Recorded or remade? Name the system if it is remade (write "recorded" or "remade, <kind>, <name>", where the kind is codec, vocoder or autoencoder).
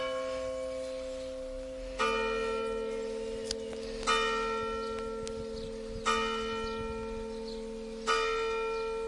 recorded